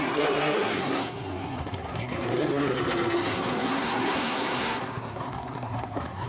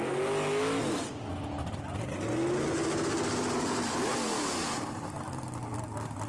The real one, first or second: second